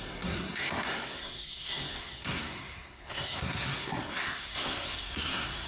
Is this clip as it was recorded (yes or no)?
no